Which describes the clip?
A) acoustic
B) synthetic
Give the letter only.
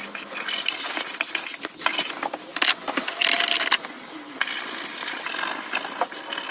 A